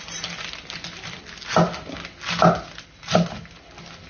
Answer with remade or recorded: recorded